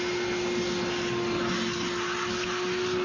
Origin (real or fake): real